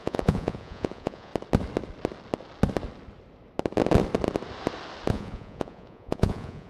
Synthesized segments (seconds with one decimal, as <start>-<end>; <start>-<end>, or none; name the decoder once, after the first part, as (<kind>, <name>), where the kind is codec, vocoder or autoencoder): 0.0-1.3 (vocoder, Vocos); 5.1-6.7